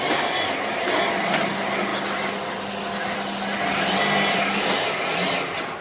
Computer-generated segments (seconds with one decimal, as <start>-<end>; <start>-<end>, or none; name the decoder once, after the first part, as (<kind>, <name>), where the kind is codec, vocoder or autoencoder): none